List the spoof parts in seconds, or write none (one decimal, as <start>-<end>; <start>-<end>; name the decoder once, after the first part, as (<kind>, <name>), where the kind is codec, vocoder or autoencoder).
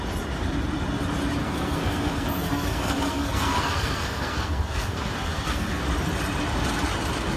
1.4-5.8 (codec, SNAC)